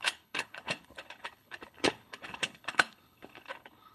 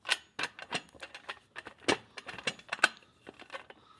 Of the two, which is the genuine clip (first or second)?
second